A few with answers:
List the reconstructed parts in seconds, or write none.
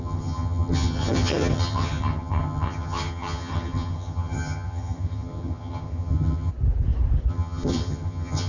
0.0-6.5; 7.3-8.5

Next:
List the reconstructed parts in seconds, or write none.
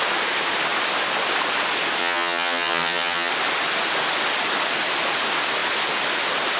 2.0-3.3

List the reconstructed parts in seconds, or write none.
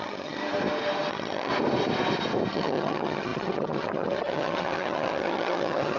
0.0-0.4; 1.1-1.5; 2.5-6.0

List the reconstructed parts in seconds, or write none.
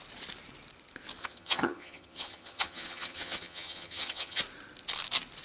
1.2-4.4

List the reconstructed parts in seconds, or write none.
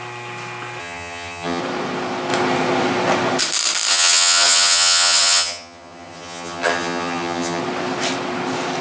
0.8-1.6; 3.9-7.6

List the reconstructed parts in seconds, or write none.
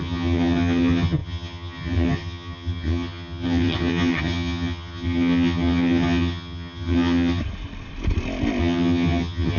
0.0-7.4; 8.6-9.6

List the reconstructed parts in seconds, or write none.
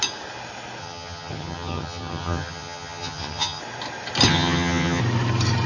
0.8-3.6; 4.3-5.0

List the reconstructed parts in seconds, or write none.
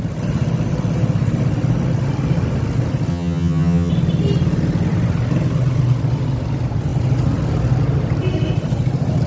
3.1-3.9